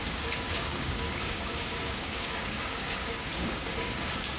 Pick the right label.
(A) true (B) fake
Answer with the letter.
B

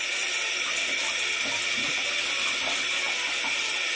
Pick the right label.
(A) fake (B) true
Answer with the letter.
B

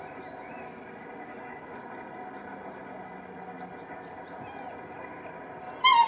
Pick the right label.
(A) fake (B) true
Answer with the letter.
B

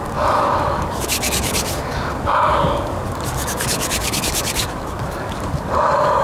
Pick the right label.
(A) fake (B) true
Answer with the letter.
A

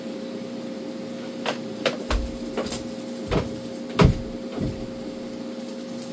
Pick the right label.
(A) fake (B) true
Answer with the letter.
B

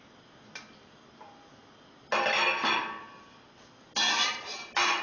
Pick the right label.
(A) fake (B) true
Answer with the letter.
B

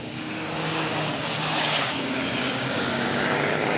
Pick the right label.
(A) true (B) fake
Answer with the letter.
B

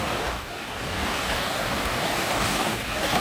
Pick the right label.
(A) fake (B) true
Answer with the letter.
A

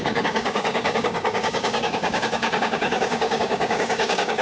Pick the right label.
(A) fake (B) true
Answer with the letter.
A